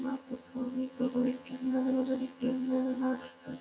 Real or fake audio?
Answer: fake